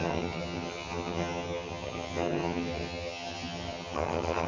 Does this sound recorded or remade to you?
remade